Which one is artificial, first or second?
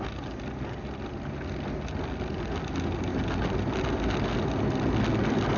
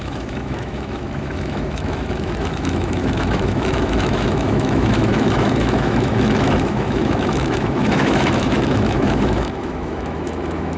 second